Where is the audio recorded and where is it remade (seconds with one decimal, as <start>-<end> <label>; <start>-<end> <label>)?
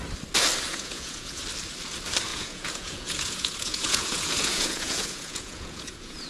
0.0-0.7 recorded; 0.7-1.4 remade; 1.4-2.3 recorded; 2.3-6.3 remade